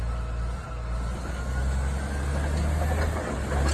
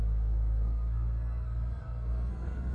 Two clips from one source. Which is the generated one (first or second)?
second